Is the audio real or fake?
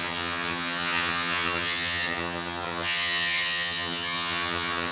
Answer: fake